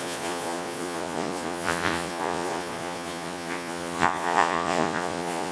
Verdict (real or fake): fake